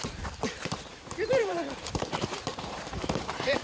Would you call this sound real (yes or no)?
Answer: no